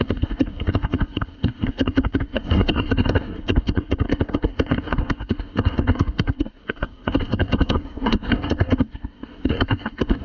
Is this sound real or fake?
fake